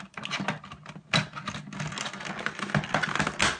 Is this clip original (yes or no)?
yes